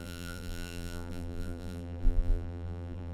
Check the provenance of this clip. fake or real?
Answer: fake